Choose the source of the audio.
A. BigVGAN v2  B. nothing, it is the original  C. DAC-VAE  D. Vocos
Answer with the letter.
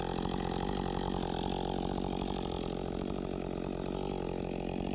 B